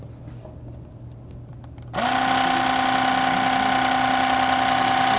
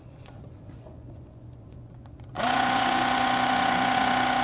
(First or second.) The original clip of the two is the first